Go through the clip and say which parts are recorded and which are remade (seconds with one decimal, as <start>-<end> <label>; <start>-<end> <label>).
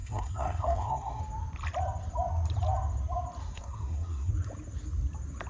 0.0-1.2 remade; 1.2-3.4 recorded; 3.4-4.3 remade; 4.3-5.5 recorded